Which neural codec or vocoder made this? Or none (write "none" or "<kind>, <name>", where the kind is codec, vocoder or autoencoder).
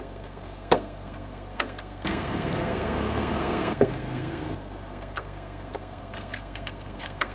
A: codec, SNAC